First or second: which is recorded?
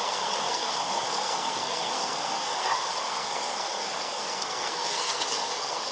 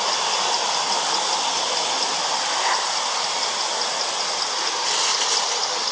second